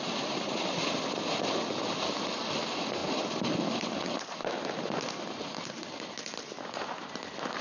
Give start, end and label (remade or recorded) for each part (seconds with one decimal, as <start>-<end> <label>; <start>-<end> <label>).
0.0-7.6 recorded